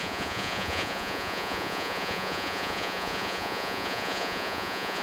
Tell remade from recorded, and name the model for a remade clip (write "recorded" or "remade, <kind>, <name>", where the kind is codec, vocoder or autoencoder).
remade, vocoder, Vocos